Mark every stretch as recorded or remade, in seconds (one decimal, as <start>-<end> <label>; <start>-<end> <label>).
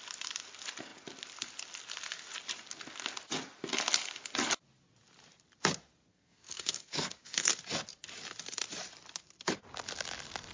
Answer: 0.0-6.1 recorded; 6.1-7.5 remade; 7.5-10.5 recorded